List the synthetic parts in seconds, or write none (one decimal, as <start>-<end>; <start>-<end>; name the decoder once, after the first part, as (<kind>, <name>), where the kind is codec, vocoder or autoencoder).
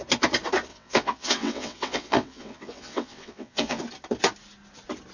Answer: 0.7-3.8 (vocoder, WaveNeXt)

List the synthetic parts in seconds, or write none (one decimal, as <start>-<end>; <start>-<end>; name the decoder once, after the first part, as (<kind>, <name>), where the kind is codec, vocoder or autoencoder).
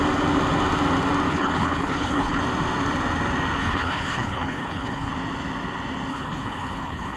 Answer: 1.3-2.4 (codec, HILCodec); 3.6-5.1; 6.1-7.2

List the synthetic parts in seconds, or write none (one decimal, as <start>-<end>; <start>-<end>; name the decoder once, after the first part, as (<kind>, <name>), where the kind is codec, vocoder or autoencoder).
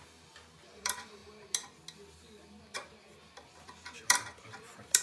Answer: 0.0-1.2 (vocoder, BigVGAN v2); 3.5-5.0